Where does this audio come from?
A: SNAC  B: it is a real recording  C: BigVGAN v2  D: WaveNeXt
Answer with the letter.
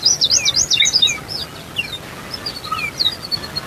B